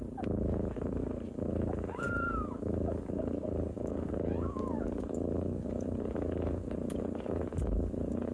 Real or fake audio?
fake